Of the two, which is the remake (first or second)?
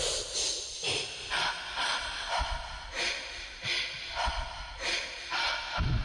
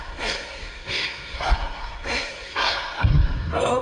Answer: second